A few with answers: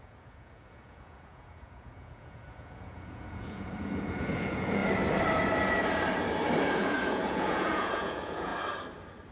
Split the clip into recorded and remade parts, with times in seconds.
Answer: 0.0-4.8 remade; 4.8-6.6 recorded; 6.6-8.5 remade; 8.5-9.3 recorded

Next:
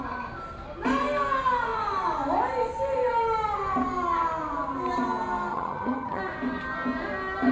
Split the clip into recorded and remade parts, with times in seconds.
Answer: 0.0-5.5 recorded; 5.5-6.2 remade; 6.2-7.5 recorded

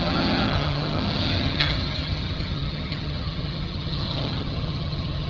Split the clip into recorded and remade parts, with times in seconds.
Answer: 0.0-5.3 remade

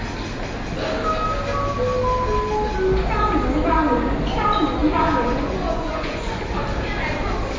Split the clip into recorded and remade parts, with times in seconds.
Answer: 0.0-4.8 recorded; 4.8-6.4 remade; 6.4-7.6 recorded

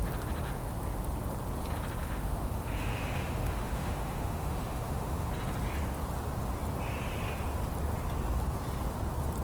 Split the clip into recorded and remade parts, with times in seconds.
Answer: 0.0-2.0 recorded; 2.0-5.3 remade; 5.3-9.4 recorded